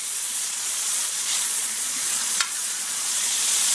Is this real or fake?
fake